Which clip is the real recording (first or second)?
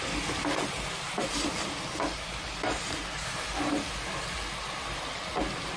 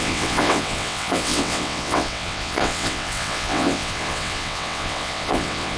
first